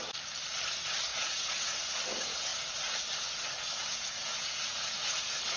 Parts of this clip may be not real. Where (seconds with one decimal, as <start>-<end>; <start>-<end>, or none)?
1.1-1.9; 3.8-5.6